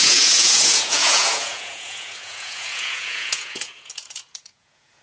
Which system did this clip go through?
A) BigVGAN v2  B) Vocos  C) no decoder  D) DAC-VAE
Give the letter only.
B